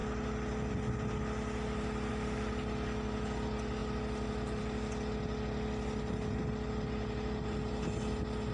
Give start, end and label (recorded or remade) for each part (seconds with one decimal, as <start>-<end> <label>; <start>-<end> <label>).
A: 0.0-8.5 recorded